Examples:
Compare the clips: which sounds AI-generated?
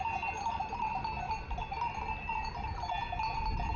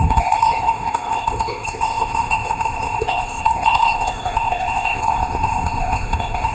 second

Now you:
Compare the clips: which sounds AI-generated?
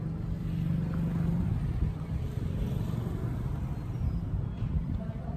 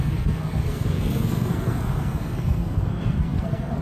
second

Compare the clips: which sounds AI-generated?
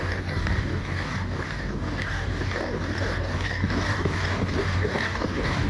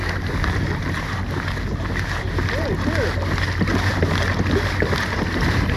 first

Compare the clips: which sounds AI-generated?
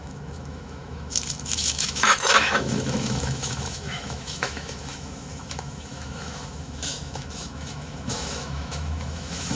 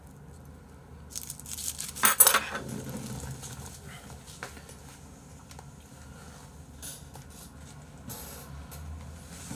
first